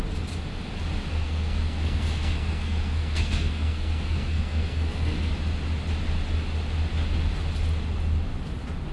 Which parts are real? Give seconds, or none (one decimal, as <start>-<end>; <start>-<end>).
0.0-1.1; 5.3-8.9